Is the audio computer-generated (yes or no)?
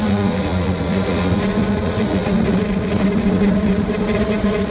yes